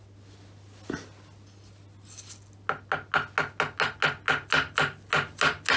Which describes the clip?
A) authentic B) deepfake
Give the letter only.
A